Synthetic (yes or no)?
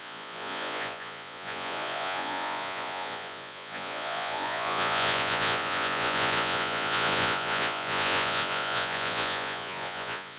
yes